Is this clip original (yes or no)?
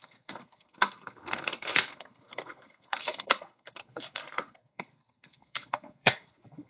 no